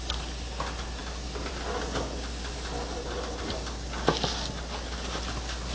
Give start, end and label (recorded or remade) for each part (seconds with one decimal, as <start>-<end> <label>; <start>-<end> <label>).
0.0-5.7 recorded